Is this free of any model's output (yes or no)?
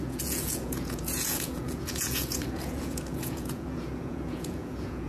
no